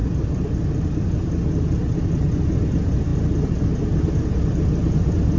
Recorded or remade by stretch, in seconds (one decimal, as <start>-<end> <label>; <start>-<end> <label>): 0.0-5.4 recorded